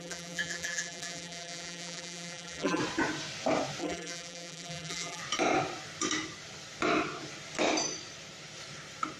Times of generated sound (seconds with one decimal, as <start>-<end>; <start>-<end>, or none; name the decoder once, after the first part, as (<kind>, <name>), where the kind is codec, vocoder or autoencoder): 0.0-2.8 (vocoder, BigVGAN v2); 3.8-5.2